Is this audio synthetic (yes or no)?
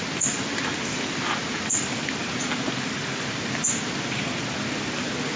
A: no